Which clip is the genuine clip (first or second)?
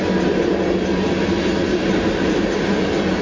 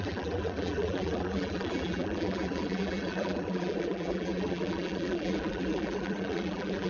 first